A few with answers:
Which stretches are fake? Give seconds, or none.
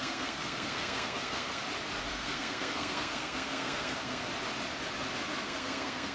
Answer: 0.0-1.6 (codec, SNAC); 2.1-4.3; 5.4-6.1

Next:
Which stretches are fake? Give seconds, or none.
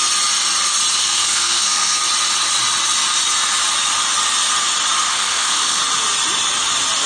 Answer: 1.0-2.0 (codec, SNAC); 5.1-5.8